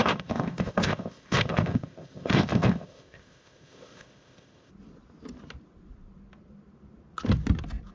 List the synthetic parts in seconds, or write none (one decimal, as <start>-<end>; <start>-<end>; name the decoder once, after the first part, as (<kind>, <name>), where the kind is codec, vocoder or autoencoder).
0.0-4.7 (codec, ZipCodec)